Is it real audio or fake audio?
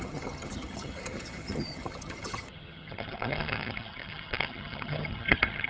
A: fake